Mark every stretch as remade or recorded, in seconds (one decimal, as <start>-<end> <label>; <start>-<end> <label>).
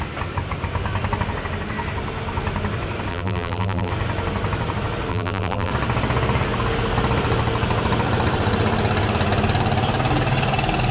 0.0-3.1 recorded; 3.1-3.9 remade; 3.9-5.1 recorded; 5.1-5.7 remade; 5.7-10.9 recorded